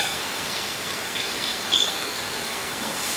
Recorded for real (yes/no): no